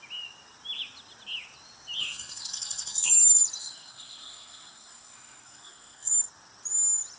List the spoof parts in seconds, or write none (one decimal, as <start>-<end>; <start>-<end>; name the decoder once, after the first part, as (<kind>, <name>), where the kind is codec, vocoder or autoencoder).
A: 2.0-3.1 (codec, SNAC); 3.6-6.1